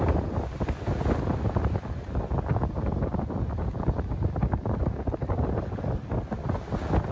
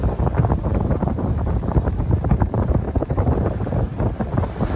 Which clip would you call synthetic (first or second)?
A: second